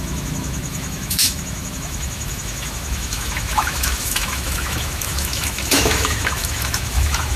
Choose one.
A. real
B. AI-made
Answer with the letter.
B